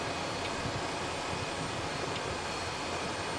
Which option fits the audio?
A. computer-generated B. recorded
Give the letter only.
B